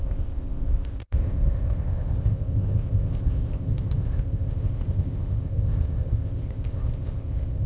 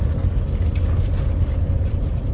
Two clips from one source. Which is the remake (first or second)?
first